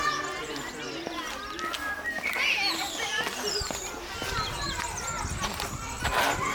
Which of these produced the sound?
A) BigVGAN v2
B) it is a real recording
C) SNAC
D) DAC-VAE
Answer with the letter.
B